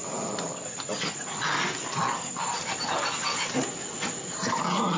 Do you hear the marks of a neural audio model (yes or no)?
no